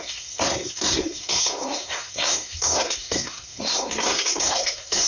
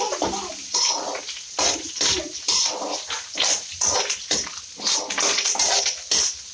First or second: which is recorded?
second